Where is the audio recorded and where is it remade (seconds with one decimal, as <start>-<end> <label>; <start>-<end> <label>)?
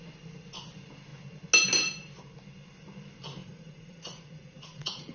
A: 0.0-3.4 recorded; 3.4-5.1 remade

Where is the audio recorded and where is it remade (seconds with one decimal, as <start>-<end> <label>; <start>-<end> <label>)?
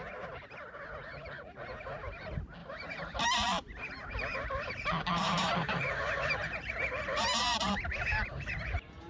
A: 0.0-2.6 recorded; 2.6-3.9 remade; 3.9-4.3 recorded; 4.3-9.1 remade